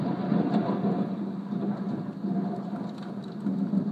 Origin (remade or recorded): remade